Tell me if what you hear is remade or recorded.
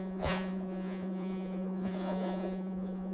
remade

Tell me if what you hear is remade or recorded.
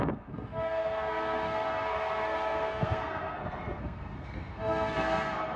remade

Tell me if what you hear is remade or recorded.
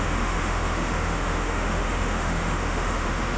remade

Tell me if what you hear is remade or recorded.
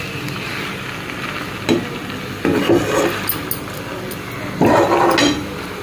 recorded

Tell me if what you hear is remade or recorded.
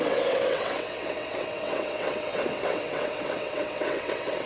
remade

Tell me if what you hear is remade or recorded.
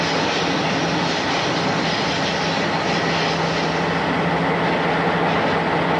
recorded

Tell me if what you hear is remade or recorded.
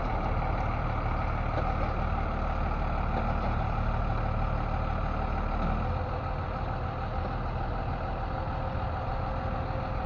recorded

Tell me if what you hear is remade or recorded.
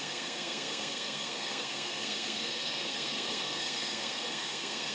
remade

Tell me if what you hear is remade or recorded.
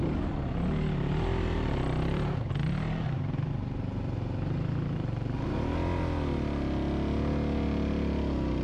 recorded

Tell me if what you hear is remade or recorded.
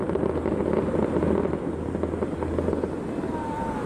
recorded